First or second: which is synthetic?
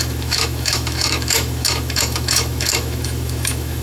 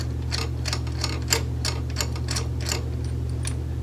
first